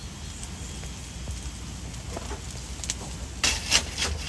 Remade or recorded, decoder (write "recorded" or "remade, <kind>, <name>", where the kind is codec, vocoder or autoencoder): recorded